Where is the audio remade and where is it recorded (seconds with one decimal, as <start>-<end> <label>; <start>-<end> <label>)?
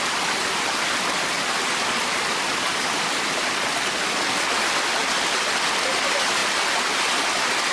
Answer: 0.0-7.7 recorded